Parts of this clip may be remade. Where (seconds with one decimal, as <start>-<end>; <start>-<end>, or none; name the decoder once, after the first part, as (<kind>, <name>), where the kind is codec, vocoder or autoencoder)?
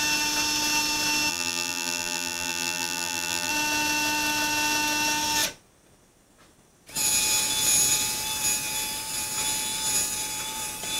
1.3-3.5 (vocoder, BigVGAN v2)